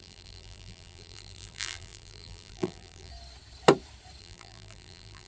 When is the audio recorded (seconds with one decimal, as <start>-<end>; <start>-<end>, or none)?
3.1-4.2

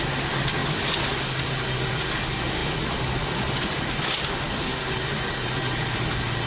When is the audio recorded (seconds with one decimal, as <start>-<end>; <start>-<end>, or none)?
0.0-6.5